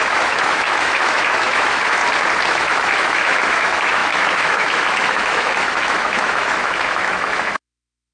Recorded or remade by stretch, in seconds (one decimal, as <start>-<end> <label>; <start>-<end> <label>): 0.0-2.0 remade; 2.0-2.5 recorded; 2.5-8.1 remade